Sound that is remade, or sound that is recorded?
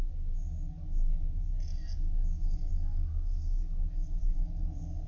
recorded